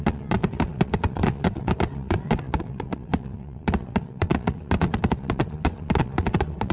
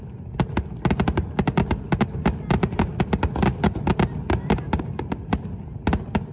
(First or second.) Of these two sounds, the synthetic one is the first